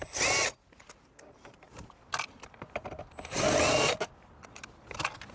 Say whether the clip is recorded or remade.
recorded